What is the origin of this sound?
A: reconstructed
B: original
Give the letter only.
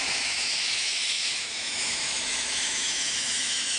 A